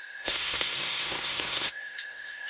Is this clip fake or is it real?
fake